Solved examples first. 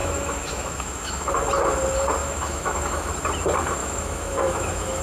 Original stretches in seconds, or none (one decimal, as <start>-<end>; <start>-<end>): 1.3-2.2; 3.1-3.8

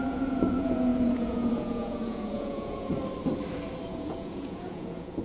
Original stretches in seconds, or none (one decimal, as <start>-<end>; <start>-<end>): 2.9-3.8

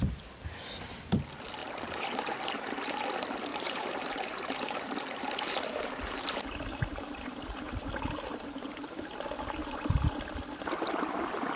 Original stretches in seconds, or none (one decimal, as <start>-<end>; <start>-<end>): 0.0-1.6; 2.8-3.5; 7.7-9.6; 10.7-11.6

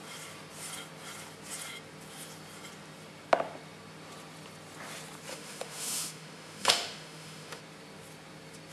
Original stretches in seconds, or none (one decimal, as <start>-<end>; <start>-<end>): 0.0-5.3; 7.6-8.7

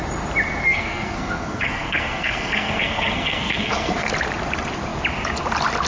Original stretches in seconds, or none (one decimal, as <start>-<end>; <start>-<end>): 0.0-0.6; 4.1-5.9

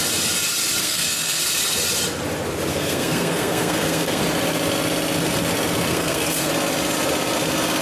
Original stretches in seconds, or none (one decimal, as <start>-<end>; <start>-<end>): 0.0-0.8; 1.4-2.7; 4.2-5.9; 6.5-7.8